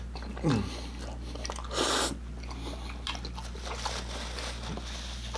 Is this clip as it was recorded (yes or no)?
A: yes